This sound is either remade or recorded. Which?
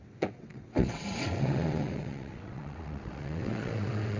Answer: remade